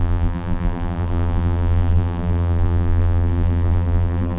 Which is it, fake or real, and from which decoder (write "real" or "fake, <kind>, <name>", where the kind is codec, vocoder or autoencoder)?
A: fake, vocoder, BigVGAN v2